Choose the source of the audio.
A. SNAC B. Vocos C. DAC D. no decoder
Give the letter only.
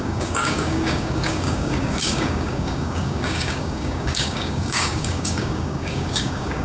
C